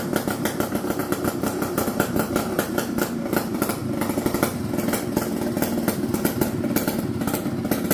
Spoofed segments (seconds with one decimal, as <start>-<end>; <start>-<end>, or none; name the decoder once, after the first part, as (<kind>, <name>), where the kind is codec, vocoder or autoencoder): 1.0-2.7 (vocoder, BigVGAN v2)